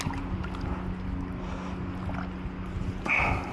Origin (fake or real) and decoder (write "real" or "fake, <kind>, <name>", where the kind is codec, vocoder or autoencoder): real